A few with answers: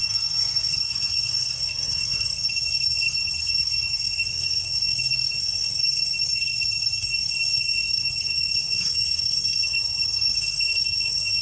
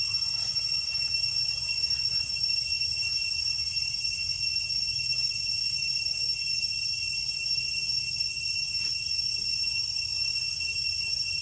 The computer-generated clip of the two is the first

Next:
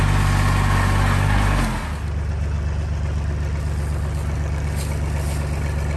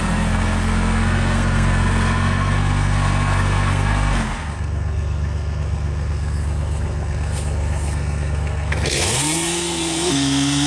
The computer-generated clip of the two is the second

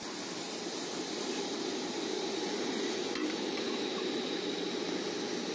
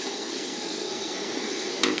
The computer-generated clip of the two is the second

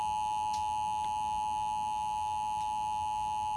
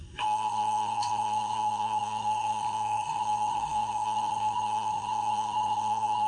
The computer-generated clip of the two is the second